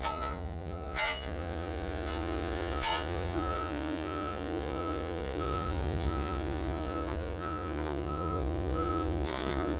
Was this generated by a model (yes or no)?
yes